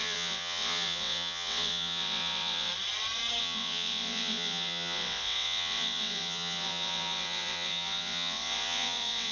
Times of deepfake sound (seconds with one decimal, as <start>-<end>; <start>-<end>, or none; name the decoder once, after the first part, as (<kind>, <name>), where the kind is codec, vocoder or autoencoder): 0.0-2.7 (vocoder, WaveNeXt); 3.4-9.3